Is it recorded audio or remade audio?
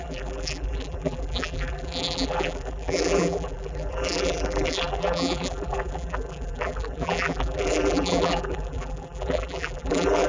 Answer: remade